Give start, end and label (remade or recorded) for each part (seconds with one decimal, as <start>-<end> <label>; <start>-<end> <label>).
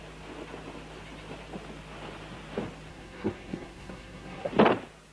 0.0-2.9 recorded; 2.9-4.5 remade; 4.5-5.1 recorded